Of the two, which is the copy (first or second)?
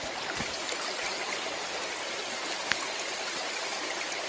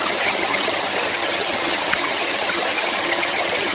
second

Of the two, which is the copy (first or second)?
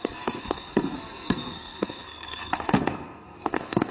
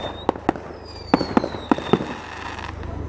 first